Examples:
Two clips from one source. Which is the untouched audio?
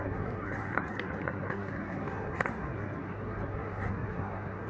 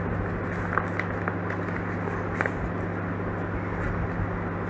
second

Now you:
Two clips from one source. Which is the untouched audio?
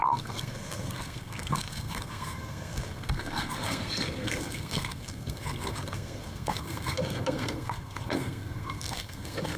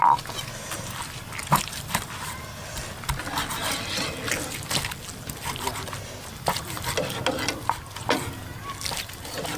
second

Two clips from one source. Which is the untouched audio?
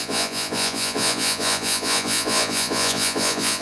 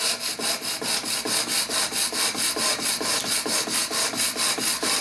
second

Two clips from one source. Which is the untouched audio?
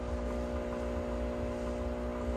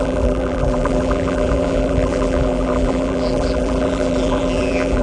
first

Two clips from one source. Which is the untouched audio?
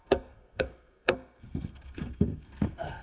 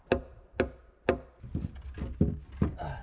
second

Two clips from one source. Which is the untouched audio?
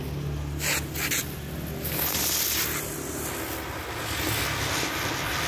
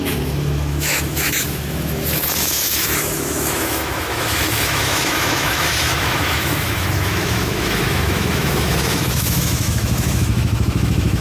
first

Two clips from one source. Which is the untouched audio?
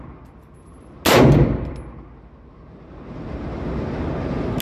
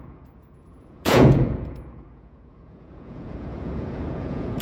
first